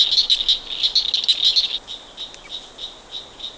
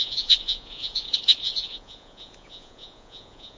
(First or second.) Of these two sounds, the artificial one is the second